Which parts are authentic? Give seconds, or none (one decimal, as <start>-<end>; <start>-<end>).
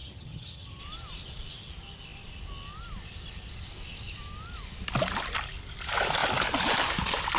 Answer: 0.8-7.4